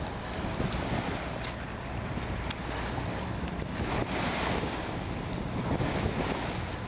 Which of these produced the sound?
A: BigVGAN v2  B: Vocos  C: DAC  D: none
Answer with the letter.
D